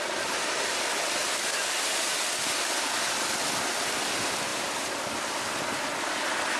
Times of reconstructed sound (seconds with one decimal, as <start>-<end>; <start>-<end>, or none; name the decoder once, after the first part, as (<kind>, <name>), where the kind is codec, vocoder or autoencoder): 4.5-5.3 (vocoder, BigVGAN v2)